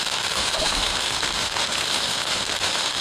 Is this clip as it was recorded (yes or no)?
no